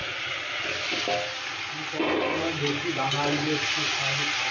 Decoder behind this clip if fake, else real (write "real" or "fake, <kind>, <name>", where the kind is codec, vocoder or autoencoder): real